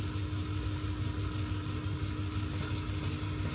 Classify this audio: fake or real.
real